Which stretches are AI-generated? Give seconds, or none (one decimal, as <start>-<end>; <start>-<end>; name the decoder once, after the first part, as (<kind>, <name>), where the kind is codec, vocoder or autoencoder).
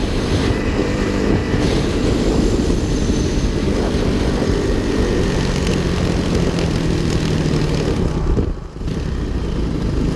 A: 0.0-1.4 (vocoder, BigVGAN v2); 2.1-10.2